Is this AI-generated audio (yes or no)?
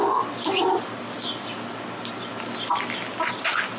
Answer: no